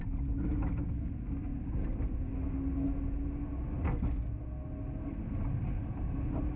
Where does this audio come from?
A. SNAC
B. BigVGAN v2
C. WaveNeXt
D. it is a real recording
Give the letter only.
D